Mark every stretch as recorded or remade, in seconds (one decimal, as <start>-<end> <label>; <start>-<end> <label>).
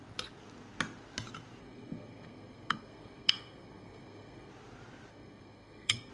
0.0-1.6 recorded; 1.6-4.5 remade; 4.5-5.1 recorded; 5.1-6.1 remade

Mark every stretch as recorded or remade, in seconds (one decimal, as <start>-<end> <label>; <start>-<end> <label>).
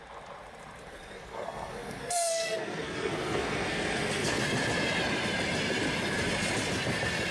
0.0-0.8 recorded; 0.8-4.4 remade; 4.4-7.3 recorded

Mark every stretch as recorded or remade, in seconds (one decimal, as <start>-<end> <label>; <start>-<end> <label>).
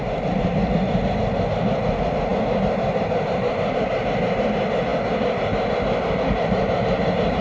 0.0-7.4 recorded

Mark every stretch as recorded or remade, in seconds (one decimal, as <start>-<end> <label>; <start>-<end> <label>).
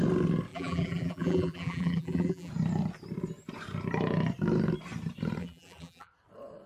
0.0-0.5 recorded; 0.5-2.5 remade; 2.5-5.4 recorded; 5.4-6.1 remade; 6.1-6.7 recorded